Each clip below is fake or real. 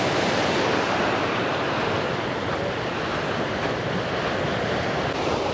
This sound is real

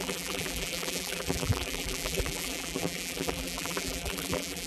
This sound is fake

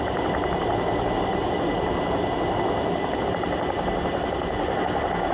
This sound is real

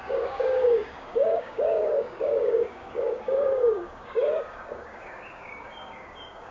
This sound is fake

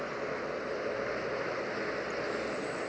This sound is real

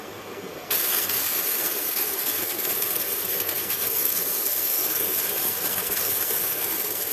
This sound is fake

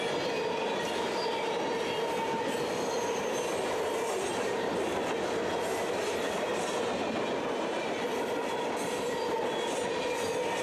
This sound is real